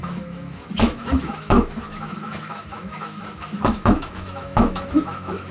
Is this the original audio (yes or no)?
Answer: no